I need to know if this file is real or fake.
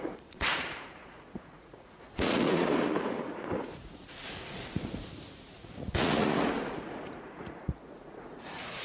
fake